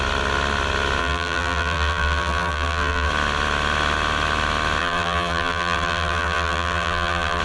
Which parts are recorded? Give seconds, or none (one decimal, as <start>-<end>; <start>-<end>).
0.0-1.0; 3.1-4.8